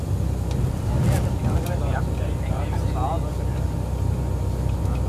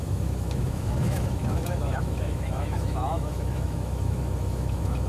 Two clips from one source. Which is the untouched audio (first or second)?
first